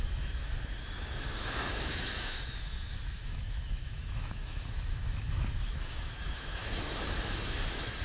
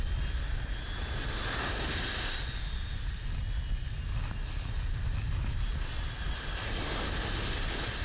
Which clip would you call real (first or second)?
second